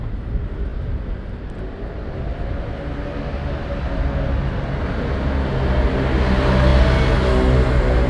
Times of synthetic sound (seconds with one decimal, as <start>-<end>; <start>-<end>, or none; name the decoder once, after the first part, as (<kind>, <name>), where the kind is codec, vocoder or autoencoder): none